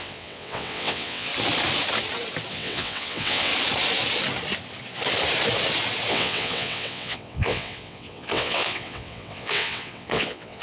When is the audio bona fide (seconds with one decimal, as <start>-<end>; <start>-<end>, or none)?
1.3-2.5; 3.5-6.1

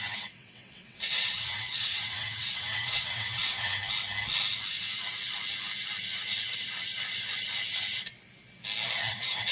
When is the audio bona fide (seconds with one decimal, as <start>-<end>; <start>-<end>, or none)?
3.8-9.1

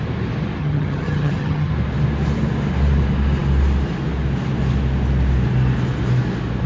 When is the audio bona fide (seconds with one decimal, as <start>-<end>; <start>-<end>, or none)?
0.0-0.6; 1.7-6.7

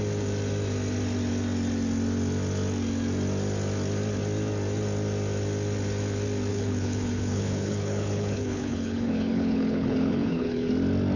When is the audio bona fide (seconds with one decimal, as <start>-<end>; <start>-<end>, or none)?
0.0-6.5; 10.7-11.2

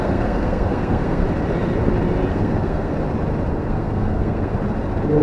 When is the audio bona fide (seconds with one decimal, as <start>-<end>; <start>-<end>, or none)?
1.2-2.3; 2.9-3.5; 4.5-5.2

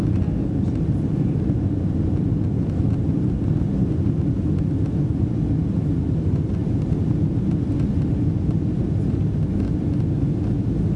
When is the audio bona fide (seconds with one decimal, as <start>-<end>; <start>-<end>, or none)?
0.0-11.0